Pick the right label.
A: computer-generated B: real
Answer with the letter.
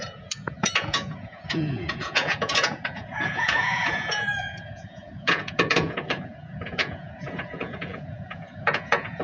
A